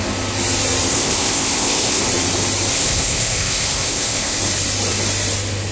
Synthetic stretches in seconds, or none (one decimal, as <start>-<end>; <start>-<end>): 0.9-2.0; 2.7-4.4